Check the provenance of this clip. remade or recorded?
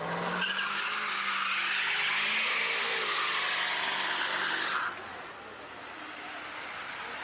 recorded